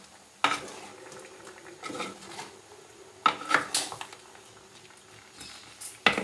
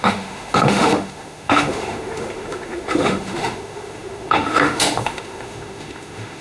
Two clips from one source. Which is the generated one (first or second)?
second